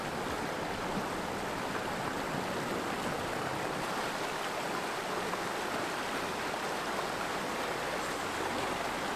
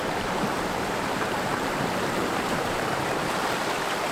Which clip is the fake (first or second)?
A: second